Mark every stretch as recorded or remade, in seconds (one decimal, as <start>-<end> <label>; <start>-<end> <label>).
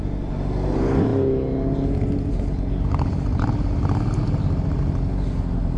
0.0-5.8 recorded